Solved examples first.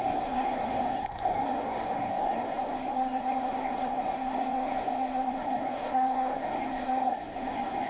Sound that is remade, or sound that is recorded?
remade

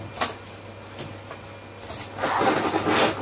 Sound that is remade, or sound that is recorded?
recorded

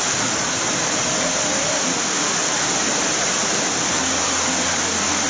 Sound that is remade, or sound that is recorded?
recorded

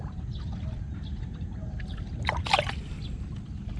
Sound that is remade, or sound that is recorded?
recorded